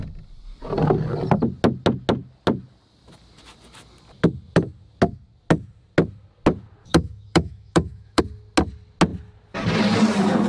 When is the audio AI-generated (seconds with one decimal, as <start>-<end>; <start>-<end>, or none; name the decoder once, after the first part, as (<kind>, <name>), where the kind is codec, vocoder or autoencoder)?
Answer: 6.8-8.2 (autoencoder, DAC-VAE)